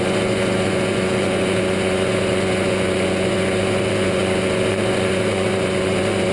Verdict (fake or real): fake